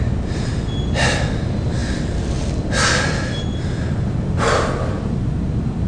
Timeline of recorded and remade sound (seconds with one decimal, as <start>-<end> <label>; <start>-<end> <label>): 0.0-5.9 recorded